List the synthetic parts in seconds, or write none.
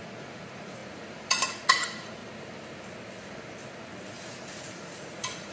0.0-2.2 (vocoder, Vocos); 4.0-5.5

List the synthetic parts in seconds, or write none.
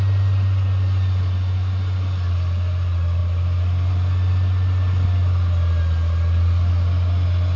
none